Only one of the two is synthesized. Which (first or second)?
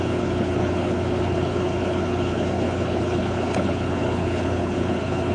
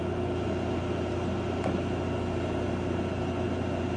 first